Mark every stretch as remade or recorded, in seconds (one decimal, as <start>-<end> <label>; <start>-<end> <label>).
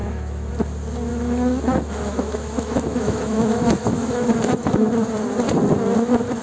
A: 0.0-0.5 remade; 0.5-1.1 recorded; 1.1-4.7 remade; 4.7-6.4 recorded